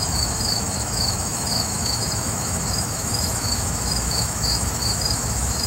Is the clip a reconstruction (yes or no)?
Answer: yes